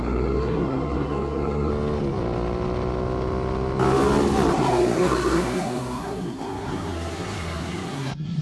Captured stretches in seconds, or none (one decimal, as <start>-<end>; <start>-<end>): 1.7-4.5